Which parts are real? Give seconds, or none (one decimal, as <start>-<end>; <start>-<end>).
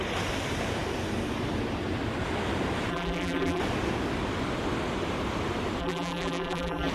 0.0-2.9; 3.6-5.8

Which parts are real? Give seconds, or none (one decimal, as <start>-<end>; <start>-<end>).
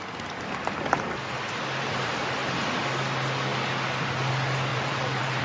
0.0-4.7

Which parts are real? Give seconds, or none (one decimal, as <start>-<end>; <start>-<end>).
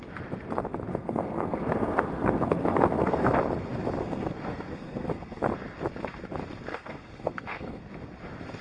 0.0-0.9; 3.3-4.0; 5.4-6.7; 7.9-8.6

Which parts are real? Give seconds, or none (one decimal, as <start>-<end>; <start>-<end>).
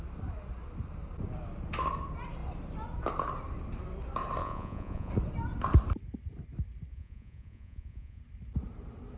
0.0-4.4; 5.1-6.9; 8.2-9.2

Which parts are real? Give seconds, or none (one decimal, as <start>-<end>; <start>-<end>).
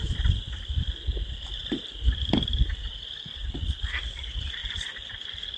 0.0-5.6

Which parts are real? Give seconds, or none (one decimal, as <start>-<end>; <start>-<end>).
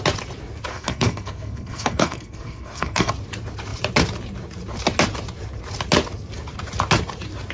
0.0-0.7; 3.1-7.5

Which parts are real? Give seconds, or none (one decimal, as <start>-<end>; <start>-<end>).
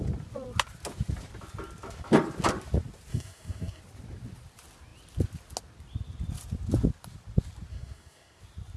0.0-3.1; 3.8-7.7; 8.4-8.8